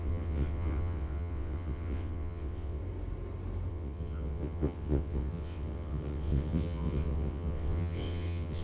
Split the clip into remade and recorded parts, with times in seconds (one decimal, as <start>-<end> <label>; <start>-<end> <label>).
0.0-2.8 remade; 2.8-3.7 recorded; 3.7-8.6 remade